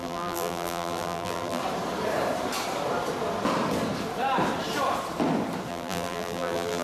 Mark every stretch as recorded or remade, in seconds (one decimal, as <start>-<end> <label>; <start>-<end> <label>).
0.0-1.6 remade; 1.6-5.7 recorded; 5.7-6.8 remade